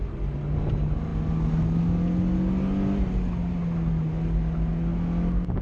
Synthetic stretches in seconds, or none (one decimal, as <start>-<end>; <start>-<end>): none